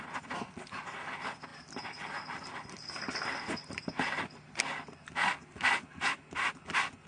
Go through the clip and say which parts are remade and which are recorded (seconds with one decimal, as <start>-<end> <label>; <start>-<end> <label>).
0.0-7.1 recorded